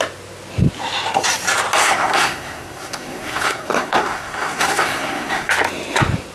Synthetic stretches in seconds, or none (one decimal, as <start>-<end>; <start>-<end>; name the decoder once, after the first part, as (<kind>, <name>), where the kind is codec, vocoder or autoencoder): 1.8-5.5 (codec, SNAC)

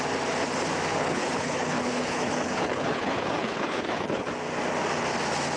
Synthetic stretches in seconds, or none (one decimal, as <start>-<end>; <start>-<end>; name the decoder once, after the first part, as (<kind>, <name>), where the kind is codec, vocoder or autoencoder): 0.9-4.3 (codec, HILCodec)

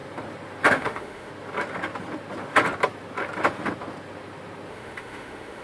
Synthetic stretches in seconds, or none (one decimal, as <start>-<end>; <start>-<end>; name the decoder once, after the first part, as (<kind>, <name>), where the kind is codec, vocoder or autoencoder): 0.7-1.3 (autoencoder, DAC-VAE); 4.7-5.6

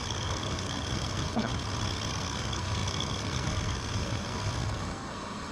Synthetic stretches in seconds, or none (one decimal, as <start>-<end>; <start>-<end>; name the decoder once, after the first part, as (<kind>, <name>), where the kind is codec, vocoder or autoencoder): 0.0-1.5 (codec, SNAC); 2.1-5.5

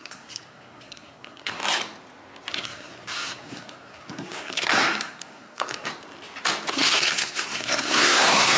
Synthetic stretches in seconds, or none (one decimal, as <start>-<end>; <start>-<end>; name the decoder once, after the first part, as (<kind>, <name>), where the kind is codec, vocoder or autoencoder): 0.0-1.6 (codec, SNAC); 2.5-5.9; 6.7-8.6

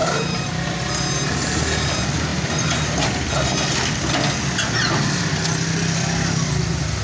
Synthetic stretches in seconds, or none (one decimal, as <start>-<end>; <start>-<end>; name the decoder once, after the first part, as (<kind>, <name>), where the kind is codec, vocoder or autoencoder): 0.0-0.7 (vocoder, BigVGAN v2)